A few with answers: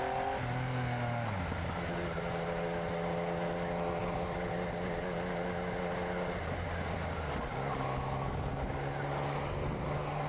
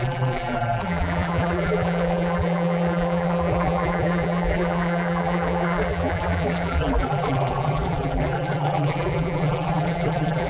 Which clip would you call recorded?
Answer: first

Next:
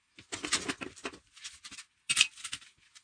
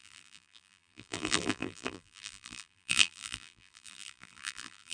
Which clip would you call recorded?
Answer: first